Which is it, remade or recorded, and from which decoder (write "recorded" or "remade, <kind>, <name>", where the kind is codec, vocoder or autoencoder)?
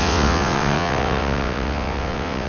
remade, vocoder, WaveNeXt